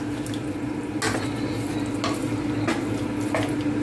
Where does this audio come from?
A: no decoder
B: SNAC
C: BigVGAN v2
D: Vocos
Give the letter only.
A